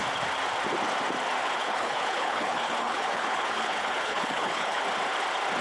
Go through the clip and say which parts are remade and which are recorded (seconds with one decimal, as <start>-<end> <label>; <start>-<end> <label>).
0.0-1.4 recorded; 1.4-4.8 remade; 4.8-5.6 recorded